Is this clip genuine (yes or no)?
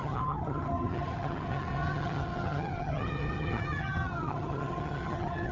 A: no